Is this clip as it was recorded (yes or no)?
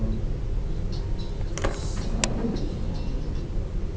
yes